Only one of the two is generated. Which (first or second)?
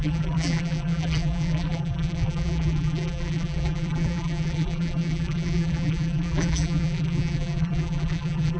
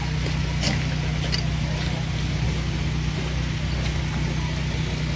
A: first